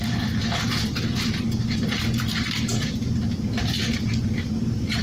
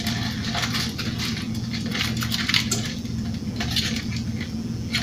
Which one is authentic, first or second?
second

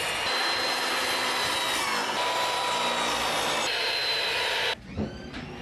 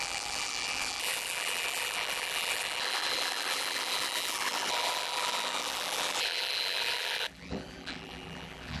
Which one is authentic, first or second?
first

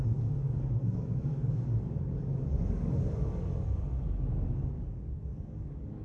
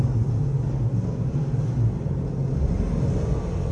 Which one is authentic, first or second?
second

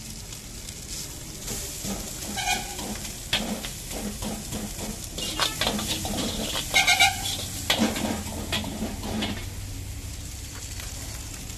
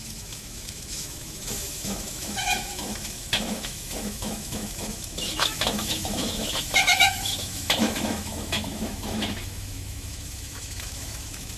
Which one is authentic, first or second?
first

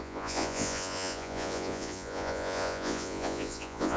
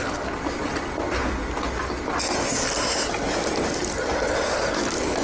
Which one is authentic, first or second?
second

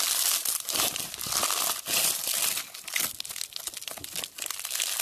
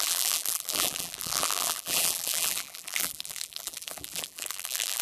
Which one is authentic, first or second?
first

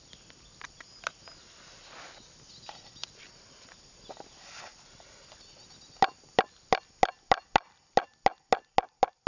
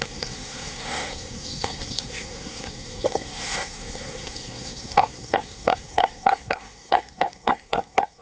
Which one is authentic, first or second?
first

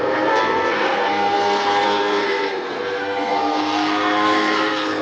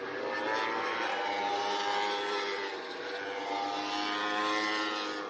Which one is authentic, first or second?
second